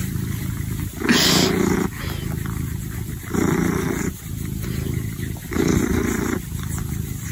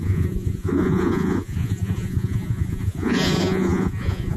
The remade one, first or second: second